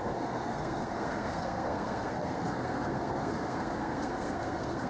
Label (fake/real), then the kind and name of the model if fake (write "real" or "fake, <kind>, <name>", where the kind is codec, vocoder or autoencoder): fake, codec, SNAC